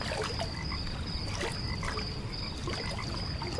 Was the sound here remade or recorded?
recorded